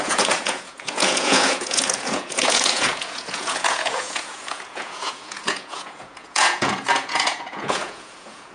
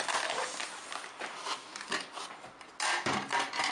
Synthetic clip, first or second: first